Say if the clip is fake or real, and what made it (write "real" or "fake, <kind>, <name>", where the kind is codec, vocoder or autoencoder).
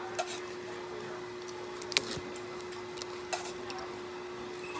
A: real